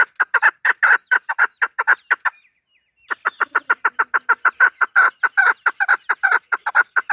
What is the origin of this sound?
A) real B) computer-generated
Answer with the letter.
A